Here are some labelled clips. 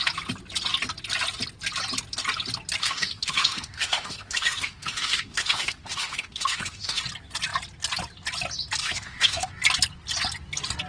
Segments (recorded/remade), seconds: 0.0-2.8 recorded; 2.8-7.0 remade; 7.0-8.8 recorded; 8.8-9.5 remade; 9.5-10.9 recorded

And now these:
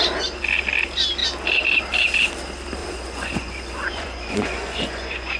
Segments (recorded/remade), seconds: 0.0-2.8 recorded; 2.8-5.4 remade

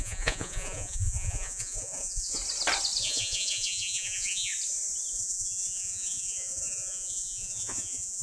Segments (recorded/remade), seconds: 0.0-2.4 remade; 2.4-3.0 recorded; 3.0-4.5 remade; 4.5-5.1 recorded; 5.1-8.2 remade

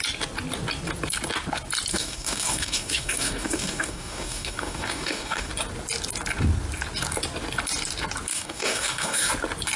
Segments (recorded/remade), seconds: 0.0-1.9 recorded; 1.9-5.5 remade; 5.5-8.3 recorded; 8.3-9.3 remade; 9.3-9.8 recorded

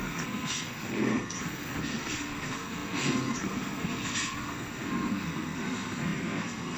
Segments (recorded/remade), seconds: 0.0-6.8 remade

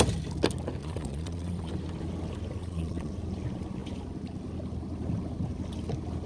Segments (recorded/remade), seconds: 0.0-0.8 recorded; 0.8-1.7 remade; 1.7-2.6 recorded; 2.6-3.1 remade; 3.1-6.3 recorded

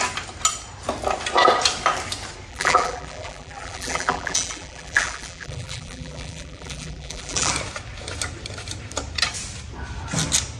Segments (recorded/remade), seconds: 0.0-2.5 recorded; 2.5-7.5 remade; 7.5-10.6 recorded

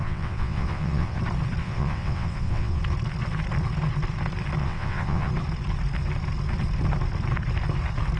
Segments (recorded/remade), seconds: 0.0-1.2 remade; 1.2-1.6 recorded; 1.6-2.8 remade; 2.8-4.6 recorded; 4.6-5.3 remade; 5.3-8.2 recorded